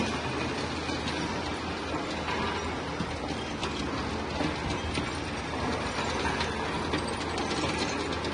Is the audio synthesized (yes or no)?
no